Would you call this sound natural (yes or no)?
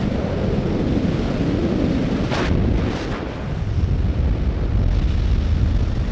yes